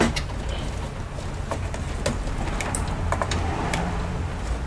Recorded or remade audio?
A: recorded